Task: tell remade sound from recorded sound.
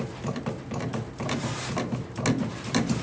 recorded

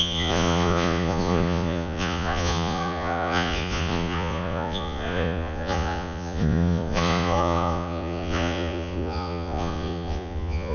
remade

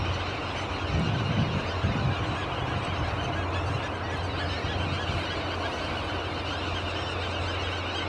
recorded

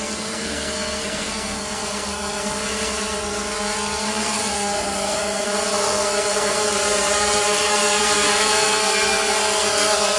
remade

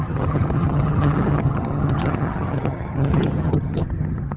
remade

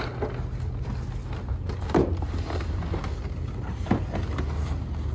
recorded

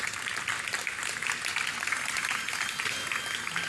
recorded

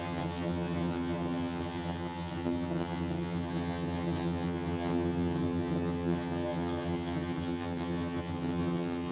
remade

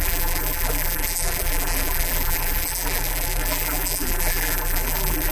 remade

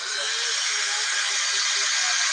recorded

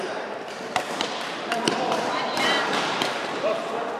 remade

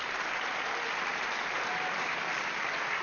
recorded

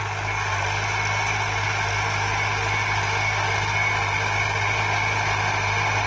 recorded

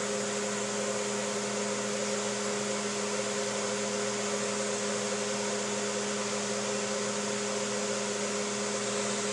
recorded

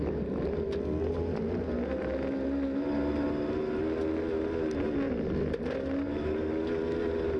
recorded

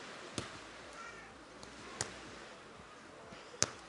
recorded